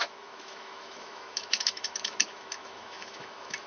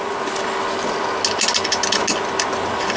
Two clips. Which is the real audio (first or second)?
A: second